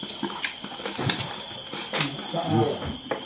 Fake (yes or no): no